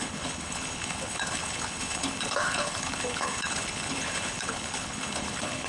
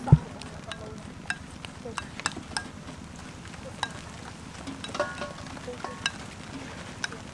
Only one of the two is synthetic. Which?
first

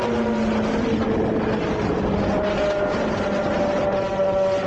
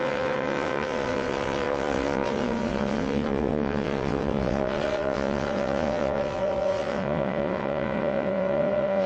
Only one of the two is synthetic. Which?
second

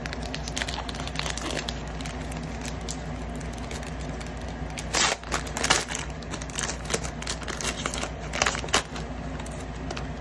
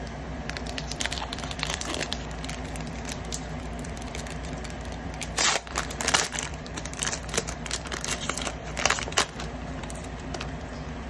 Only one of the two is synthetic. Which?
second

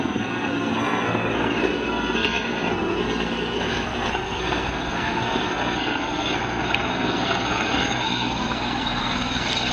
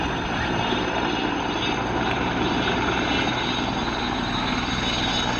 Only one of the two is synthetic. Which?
first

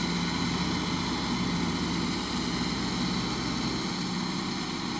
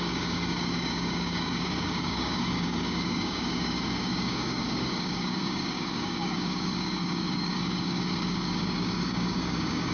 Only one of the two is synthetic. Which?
second